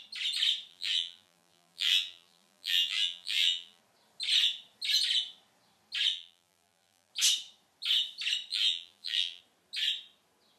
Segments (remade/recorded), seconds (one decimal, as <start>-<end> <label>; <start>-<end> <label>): 0.0-0.7 recorded; 0.7-3.8 remade; 3.8-6.1 recorded; 6.1-7.1 remade; 7.1-8.5 recorded; 8.5-9.4 remade; 9.4-10.6 recorded